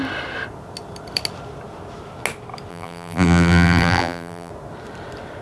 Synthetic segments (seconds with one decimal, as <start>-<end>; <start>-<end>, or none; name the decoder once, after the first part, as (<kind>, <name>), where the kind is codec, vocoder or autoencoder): 2.7-4.5 (vocoder, BigVGAN v2)